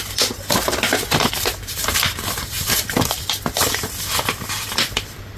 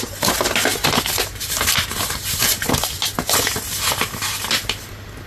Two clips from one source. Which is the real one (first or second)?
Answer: second